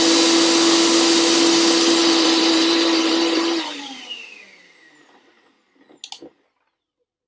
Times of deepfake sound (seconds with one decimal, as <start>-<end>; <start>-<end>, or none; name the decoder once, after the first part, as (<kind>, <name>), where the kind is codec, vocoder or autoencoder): 2.0-5.6 (vocoder, BigVGAN v2)